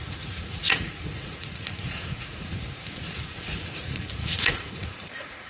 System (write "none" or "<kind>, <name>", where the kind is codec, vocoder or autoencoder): vocoder, Vocos